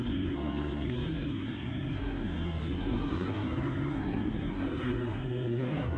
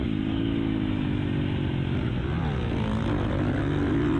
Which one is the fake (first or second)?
first